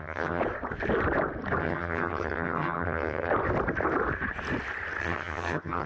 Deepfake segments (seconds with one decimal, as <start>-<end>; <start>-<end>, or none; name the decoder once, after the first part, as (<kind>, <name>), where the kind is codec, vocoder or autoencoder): 0.0-0.4 (vocoder, HiFi-GAN); 1.6-3.3; 5.0-5.9